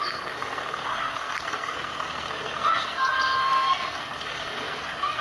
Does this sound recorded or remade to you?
remade